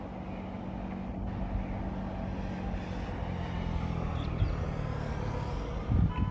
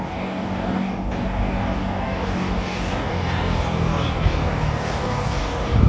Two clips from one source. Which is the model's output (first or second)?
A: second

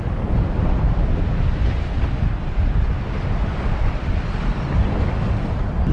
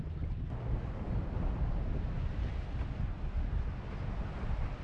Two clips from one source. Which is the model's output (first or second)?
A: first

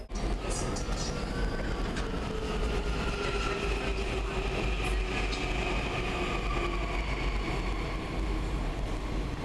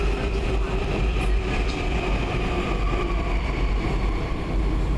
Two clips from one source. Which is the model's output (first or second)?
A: second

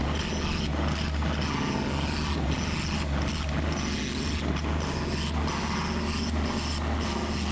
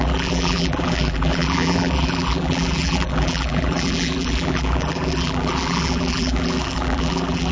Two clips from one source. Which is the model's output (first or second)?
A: second